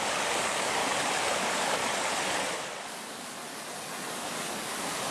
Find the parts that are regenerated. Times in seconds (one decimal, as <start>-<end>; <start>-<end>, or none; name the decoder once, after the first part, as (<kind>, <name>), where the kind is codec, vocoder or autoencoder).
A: 0.0-0.8 (codec, DAC); 1.4-1.8; 2.9-3.4; 4.1-5.1